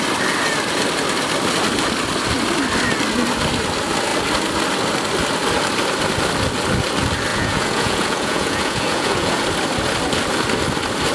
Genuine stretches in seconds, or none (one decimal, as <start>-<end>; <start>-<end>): 0.0-7.3; 9.4-11.1